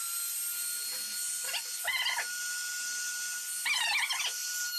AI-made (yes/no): no